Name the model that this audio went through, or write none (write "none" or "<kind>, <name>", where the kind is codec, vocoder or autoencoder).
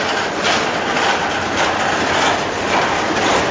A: none